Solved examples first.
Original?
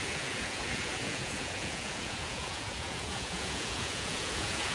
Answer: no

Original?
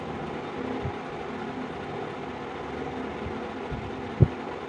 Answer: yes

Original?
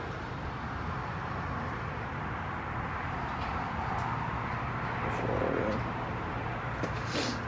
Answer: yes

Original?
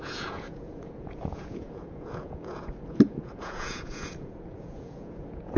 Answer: no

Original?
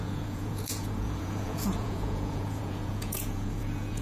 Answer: no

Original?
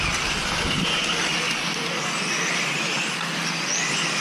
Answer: yes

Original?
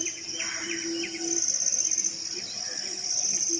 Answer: yes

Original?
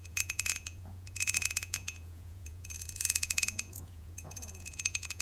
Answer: no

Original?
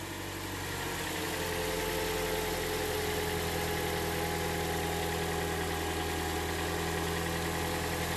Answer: yes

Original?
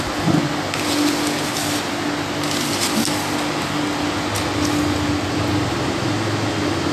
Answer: yes